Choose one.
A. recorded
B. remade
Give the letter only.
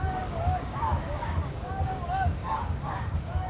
B